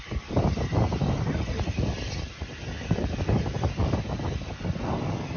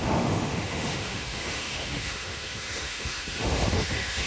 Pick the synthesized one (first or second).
second